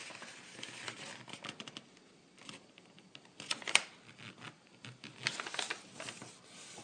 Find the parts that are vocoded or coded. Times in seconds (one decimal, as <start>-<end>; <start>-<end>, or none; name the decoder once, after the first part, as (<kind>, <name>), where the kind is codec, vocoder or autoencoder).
none